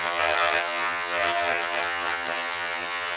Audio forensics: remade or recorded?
remade